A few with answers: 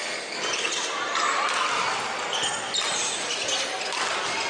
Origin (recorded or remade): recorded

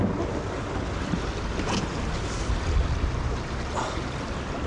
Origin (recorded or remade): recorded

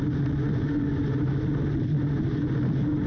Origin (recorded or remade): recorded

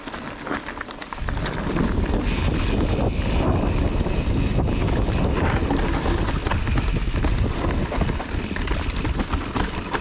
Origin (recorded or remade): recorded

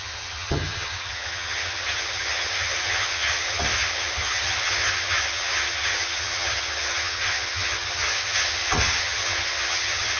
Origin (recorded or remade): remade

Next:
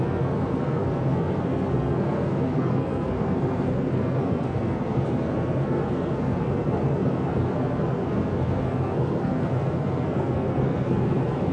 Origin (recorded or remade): remade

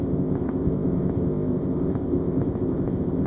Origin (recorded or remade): remade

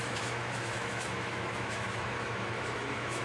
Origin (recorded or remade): remade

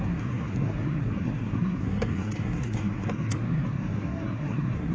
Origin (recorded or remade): remade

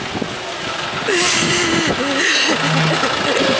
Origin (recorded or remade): recorded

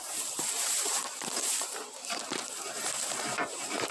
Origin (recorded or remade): remade